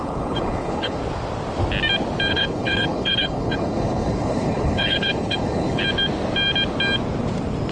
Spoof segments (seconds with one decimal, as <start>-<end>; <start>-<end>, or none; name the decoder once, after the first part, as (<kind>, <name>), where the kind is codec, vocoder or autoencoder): 0.0-1.0 (codec, HILCodec); 2.3-5.8